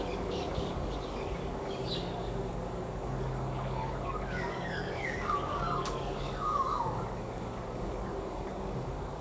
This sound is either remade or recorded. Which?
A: remade